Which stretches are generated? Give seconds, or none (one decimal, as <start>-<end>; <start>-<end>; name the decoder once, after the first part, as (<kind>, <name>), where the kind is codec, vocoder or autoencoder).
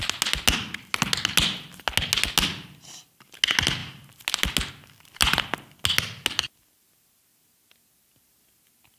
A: none